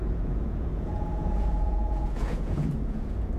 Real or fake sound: fake